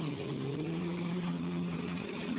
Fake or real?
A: fake